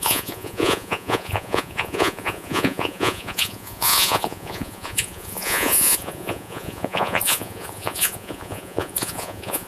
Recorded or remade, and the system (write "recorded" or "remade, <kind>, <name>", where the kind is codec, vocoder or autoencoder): remade, vocoder, Vocos